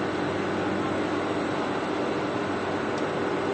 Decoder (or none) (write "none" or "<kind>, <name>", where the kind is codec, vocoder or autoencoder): none